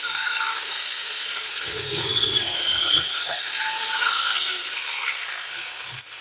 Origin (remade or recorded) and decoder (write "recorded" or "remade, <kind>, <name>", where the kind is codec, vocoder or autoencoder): remade, codec, SNAC